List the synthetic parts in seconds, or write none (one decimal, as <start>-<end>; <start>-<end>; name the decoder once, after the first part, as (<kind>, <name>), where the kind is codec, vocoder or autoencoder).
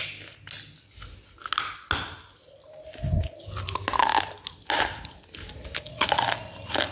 none